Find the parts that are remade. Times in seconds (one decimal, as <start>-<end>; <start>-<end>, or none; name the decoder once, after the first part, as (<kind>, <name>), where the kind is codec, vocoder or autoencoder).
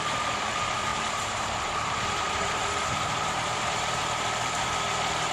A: 0.9-4.1 (vocoder, BigVGAN v2)